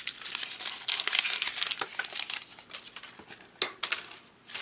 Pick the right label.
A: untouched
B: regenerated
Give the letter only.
A